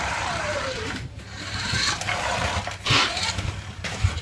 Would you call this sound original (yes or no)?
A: no